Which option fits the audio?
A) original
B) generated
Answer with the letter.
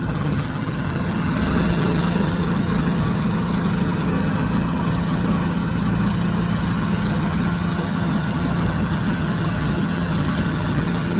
B